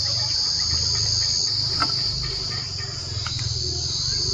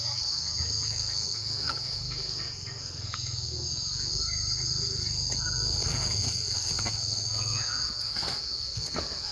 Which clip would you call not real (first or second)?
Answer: second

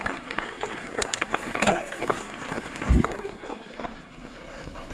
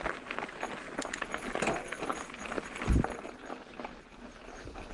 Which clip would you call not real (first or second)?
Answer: first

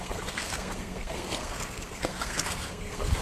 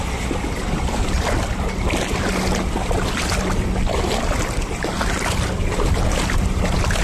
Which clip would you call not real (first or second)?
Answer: first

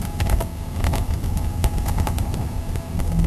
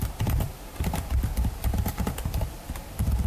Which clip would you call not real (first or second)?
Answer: first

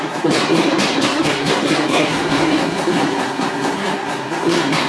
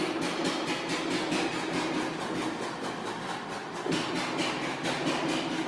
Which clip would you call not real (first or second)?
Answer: first